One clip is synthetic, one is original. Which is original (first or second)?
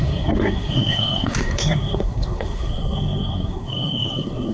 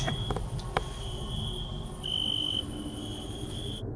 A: second